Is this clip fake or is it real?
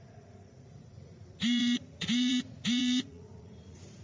fake